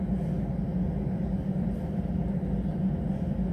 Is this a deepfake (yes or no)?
no